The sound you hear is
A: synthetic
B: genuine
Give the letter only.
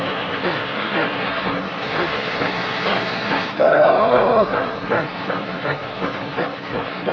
A